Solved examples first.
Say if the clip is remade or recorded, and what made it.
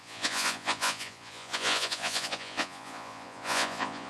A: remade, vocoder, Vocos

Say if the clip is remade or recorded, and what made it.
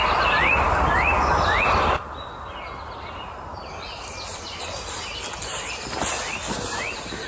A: recorded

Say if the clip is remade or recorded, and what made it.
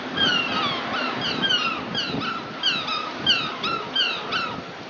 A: remade, vocoder, BigVGAN v2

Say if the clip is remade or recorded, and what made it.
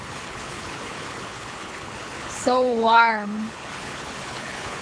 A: remade, codec, HILCodec